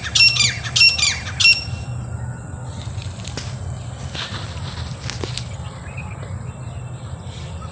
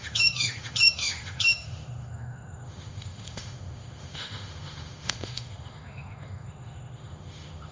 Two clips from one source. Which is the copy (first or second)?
second